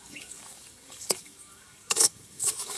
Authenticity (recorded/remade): remade